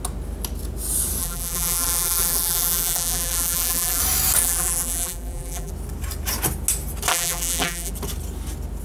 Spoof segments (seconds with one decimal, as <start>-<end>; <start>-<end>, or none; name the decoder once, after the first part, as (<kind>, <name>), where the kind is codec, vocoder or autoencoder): 1.2-4.0 (vocoder, BigVGAN v2); 4.4-5.7; 7.1-7.9